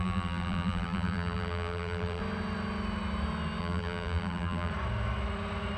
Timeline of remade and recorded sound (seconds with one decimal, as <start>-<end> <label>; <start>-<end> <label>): 0.0-2.2 remade; 2.2-3.6 recorded; 3.6-4.7 remade; 4.7-5.8 recorded